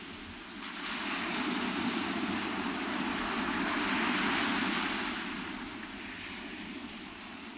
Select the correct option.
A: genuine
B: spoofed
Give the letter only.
B